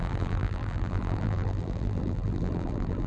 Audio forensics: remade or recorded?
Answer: remade